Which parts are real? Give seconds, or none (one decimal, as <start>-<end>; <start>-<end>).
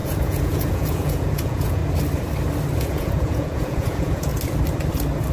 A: 1.8-2.8; 4.3-5.3